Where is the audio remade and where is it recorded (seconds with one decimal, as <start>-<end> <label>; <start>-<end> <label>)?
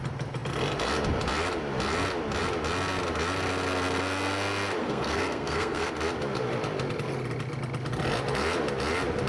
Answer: 0.0-4.8 recorded; 4.8-5.9 remade; 5.9-9.3 recorded